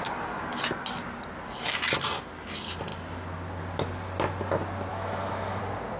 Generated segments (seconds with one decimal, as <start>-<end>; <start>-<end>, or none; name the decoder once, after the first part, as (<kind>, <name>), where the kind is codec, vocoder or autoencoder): 4.9-5.6 (autoencoder, DAC-VAE)

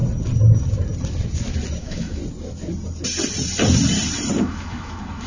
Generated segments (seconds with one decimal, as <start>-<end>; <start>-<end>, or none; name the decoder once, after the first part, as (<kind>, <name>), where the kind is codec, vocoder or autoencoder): 1.8-2.2 (autoencoder, DAC-VAE); 4.4-5.3

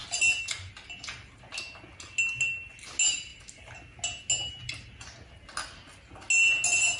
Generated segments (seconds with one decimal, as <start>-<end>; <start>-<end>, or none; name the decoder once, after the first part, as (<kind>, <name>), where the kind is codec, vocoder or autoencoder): none

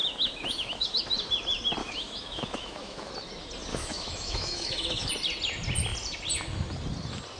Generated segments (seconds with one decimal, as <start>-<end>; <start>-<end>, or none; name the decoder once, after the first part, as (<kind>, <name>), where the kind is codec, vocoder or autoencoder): 0.0-1.0 (autoencoder, DAC-VAE); 1.8-3.1; 3.7-5.1